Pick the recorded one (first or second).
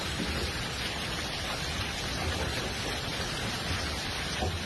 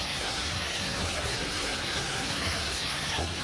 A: first